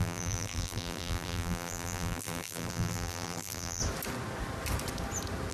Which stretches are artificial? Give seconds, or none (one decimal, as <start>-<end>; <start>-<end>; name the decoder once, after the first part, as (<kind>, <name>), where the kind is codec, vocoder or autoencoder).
0.0-3.8 (vocoder, BigVGAN v2)